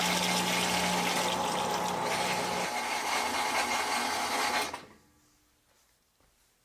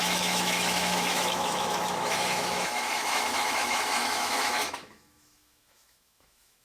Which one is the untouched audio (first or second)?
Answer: first